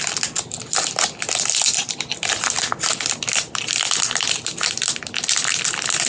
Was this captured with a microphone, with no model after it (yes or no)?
yes